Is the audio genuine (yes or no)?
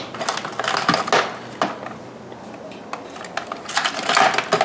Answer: yes